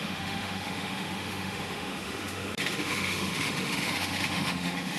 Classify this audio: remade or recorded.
remade